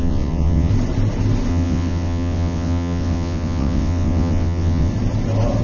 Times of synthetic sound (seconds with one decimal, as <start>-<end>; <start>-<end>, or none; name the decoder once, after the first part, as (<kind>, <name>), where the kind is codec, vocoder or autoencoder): 0.0-0.7 (vocoder, WaveNeXt); 1.5-4.9

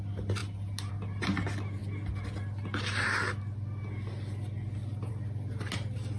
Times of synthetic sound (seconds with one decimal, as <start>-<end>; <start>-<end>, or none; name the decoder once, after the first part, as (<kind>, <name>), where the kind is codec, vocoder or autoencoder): none

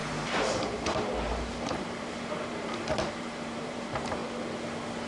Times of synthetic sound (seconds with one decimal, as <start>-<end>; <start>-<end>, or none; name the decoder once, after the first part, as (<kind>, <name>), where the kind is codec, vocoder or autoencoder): 0.0-4.2 (vocoder, BigVGAN v2)

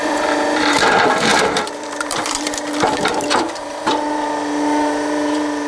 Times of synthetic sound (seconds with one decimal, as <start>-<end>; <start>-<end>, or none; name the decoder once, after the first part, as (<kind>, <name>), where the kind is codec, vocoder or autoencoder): 0.0-5.7 (vocoder, BigVGAN v2)

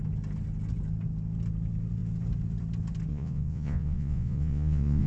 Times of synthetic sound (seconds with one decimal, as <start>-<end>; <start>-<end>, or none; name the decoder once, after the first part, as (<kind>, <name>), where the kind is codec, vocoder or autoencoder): 3.1-5.1 (vocoder, Vocos)

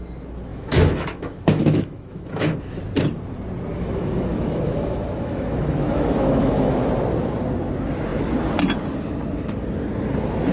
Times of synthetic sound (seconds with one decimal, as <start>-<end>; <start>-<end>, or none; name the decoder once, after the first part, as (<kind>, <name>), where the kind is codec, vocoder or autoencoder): 0.5-2.8 (autoencoder, DAC-VAE); 3.7-6.8

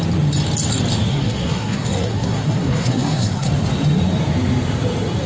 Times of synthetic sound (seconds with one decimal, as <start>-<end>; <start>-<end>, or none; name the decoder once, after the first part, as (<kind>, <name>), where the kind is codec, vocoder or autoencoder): 1.1-3.5 (codec, SNAC)